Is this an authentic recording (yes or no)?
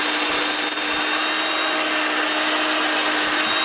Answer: yes